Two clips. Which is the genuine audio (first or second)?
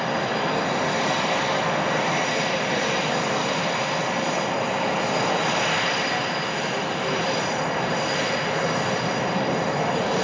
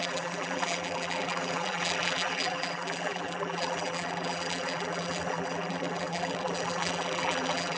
first